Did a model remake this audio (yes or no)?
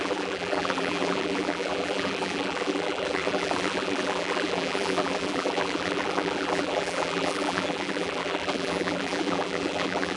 yes